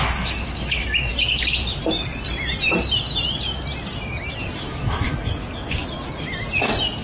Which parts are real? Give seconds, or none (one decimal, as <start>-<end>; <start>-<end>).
1.1-4.6; 5.1-7.0

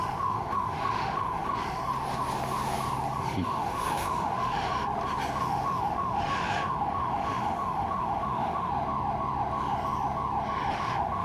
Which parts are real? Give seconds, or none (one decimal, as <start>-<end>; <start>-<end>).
1.8-3.2; 4.7-5.4; 8.7-10.7

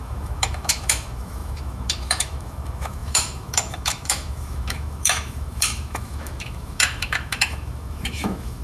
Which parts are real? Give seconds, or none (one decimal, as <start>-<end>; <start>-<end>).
none

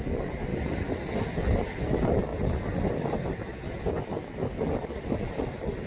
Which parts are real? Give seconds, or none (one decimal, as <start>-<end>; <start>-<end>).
0.0-5.9

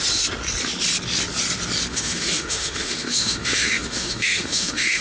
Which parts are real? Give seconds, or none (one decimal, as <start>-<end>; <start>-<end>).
0.0-1.9

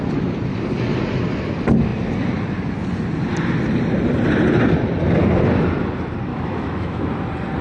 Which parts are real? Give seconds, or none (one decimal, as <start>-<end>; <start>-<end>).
0.0-6.3; 7.1-7.6

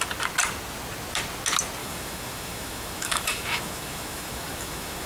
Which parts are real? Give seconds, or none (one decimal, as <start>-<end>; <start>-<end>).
0.0-1.8

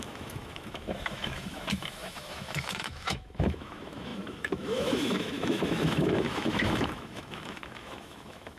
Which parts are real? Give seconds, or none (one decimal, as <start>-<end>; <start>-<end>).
none